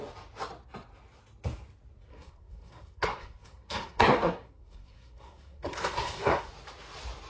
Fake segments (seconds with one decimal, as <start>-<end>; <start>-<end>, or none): 2.1-6.5